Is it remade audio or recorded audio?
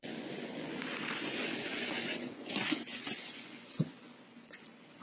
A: remade